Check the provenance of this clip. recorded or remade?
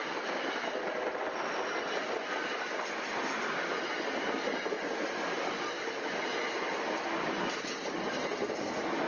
recorded